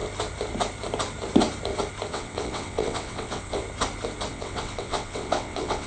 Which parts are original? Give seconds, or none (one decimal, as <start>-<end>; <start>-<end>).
0.0-2.1; 3.6-4.3